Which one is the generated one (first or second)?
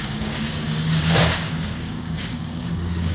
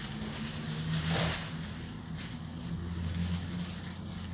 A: first